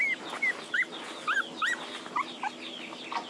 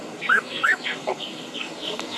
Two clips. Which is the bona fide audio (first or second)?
first